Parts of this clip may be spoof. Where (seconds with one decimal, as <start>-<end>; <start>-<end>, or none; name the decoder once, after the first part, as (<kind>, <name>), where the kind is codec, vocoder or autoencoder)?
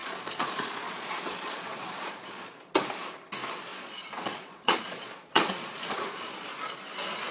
0.0-2.5 (vocoder, Vocos); 3.7-6.3